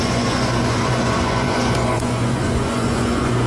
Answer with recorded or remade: remade